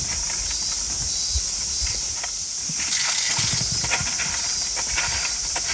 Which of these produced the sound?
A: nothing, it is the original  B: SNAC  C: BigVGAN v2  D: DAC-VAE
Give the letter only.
A